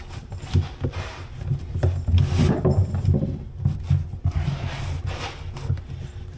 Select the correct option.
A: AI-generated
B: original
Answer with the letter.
B